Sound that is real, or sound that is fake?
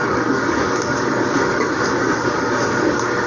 fake